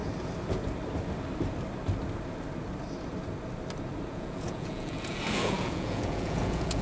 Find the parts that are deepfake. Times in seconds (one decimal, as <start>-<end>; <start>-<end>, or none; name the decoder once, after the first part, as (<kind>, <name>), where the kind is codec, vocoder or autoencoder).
4.1-6.8 (vocoder, Vocos)